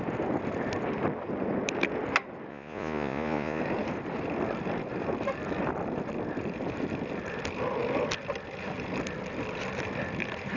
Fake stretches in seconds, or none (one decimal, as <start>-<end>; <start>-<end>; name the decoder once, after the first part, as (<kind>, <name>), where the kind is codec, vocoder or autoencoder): 2.5-3.6 (vocoder, Vocos)